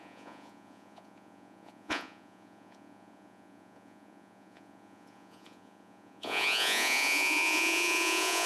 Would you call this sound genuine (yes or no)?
no